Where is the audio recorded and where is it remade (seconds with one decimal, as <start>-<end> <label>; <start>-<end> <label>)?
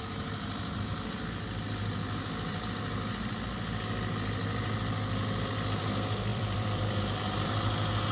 0.0-6.3 recorded; 6.3-7.0 remade; 7.0-8.1 recorded